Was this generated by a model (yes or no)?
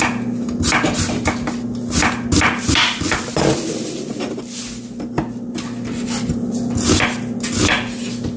no